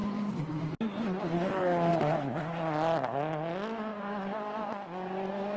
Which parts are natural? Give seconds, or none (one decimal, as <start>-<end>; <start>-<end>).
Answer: 0.8-1.9; 2.4-3.9; 4.7-5.6

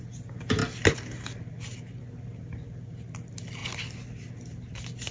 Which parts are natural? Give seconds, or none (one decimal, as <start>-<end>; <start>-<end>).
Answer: 0.0-5.1

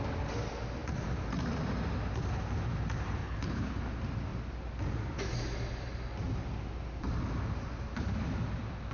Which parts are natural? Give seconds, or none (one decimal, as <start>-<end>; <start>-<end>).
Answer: 0.0-3.2; 3.8-8.9

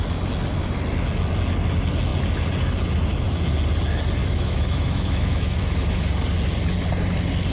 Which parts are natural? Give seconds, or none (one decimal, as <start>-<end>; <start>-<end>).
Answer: 0.0-4.2; 6.0-7.5